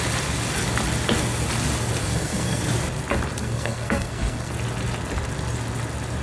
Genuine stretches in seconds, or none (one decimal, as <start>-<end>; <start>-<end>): 0.0-2.0; 2.6-3.4; 4.5-6.2